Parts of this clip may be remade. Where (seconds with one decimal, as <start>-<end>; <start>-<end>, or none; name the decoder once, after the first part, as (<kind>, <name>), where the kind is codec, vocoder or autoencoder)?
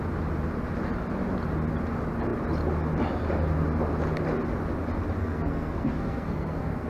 5.2-6.9 (codec, SNAC)